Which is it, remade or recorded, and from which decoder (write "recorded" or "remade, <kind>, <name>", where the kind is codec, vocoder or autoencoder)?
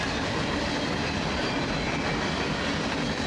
recorded